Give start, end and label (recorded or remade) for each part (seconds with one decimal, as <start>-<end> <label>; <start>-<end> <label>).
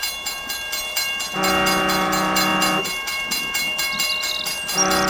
0.0-5.1 recorded